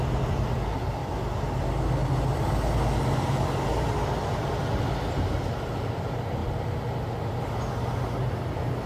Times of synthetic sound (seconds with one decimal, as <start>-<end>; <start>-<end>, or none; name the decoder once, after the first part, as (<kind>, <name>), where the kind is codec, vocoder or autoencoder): 0.0-1.0 (vocoder, BigVGAN v2); 5.0-6.4